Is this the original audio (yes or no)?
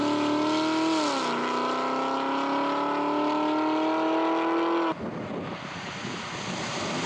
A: yes